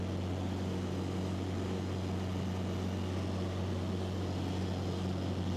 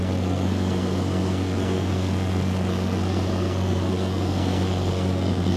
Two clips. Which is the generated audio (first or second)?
second